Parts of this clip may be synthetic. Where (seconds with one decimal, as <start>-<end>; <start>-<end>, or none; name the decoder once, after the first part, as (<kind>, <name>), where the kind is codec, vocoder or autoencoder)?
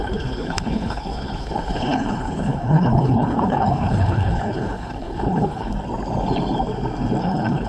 0.0-5.7 (codec, HILCodec); 7.2-7.7